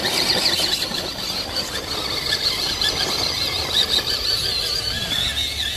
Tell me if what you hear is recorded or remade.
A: recorded